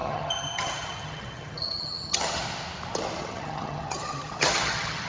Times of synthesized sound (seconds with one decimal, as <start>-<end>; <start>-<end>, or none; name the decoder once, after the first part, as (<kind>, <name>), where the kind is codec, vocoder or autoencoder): 0.0-2.4 (vocoder, HiFi-GAN); 3.2-5.1